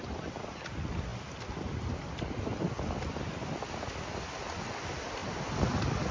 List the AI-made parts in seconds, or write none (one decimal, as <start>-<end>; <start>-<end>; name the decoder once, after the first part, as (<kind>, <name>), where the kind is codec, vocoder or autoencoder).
none

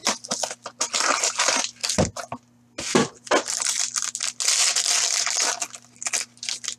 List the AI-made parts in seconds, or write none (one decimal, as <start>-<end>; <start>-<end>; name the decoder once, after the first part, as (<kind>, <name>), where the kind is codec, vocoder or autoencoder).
none

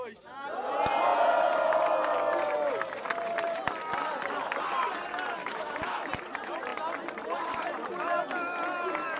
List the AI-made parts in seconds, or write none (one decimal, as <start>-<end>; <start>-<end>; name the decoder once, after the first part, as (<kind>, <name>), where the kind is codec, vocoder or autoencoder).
5.4-6.1 (autoencoder, DAC-VAE)

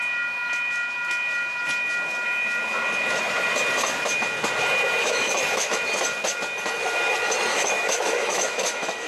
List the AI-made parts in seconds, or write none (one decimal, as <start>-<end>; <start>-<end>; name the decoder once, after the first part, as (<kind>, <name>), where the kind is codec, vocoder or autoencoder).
5.0-5.7 (autoencoder, DAC-VAE); 7.5-9.1

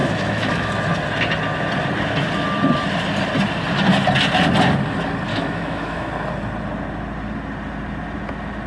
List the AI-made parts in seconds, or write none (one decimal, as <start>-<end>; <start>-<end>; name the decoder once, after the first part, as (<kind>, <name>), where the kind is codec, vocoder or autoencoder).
0.0-0.7 (autoencoder, DAC-VAE); 5.3-6.1

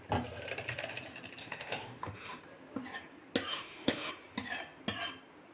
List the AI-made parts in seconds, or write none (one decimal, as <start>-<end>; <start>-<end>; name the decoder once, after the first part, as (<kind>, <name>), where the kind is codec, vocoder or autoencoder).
1.4-2.4 (autoencoder, DAC-VAE); 3.5-4.1

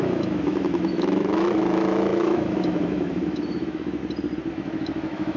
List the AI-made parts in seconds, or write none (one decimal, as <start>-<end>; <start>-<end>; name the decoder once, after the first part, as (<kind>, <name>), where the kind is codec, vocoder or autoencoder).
0.0-4.0 (autoencoder, DAC-VAE); 4.5-5.4